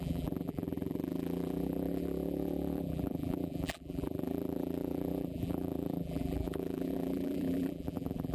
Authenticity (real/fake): fake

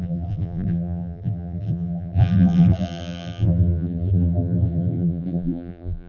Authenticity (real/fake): fake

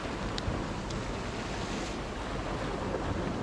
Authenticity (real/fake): real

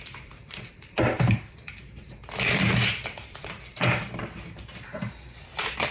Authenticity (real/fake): fake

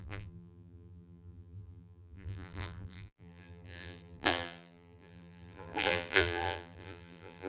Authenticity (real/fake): fake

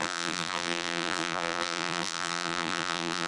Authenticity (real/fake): fake